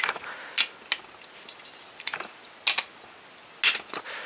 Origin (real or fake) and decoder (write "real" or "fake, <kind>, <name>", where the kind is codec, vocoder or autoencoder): real